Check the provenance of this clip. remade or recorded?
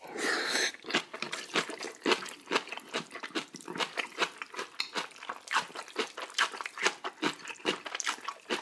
remade